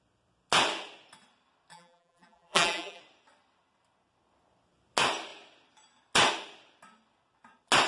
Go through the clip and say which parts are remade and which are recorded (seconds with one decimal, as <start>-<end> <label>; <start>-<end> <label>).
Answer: 0.0-1.7 recorded; 1.7-3.0 remade; 3.0-7.9 recorded